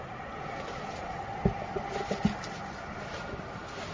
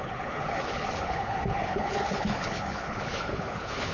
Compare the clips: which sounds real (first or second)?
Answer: first